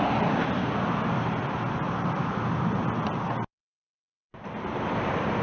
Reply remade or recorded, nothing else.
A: recorded